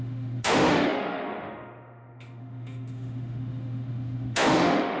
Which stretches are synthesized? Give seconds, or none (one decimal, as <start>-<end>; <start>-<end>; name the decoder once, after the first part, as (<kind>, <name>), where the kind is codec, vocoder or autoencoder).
0.0-5.0 (autoencoder, DAC-VAE)